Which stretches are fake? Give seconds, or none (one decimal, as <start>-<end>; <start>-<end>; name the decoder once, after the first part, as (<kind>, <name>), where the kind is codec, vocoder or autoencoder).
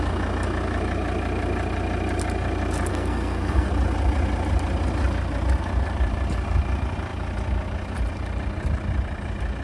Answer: 2.9-3.7 (codec, SNAC)